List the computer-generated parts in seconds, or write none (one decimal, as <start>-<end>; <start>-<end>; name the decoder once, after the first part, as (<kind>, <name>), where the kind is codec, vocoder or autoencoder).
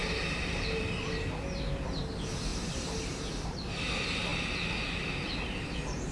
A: 0.0-0.8 (vocoder, BigVGAN v2); 2.5-3.3